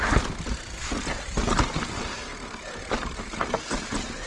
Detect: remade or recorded recorded